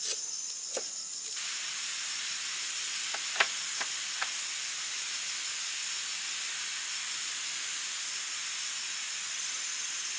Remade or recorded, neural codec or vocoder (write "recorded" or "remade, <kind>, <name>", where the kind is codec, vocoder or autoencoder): recorded